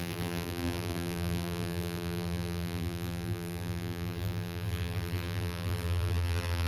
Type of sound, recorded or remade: remade